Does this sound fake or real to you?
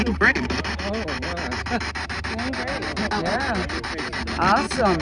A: real